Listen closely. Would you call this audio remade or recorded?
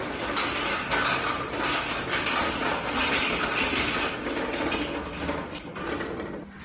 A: recorded